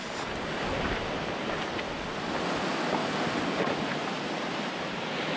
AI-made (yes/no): no